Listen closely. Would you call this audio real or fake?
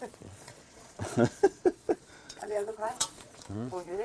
fake